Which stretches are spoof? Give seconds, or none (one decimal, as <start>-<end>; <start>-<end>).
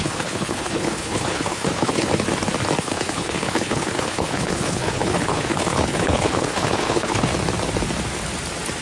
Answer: 0.0-2.1; 2.8-7.3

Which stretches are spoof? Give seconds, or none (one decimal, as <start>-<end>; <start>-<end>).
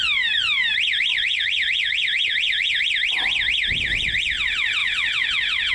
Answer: 1.1-2.8; 4.8-5.7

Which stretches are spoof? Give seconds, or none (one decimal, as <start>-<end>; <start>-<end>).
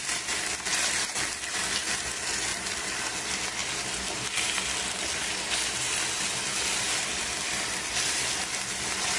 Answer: 2.5-3.2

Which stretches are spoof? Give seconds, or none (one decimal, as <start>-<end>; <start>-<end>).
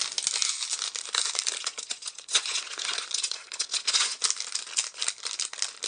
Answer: 1.6-4.2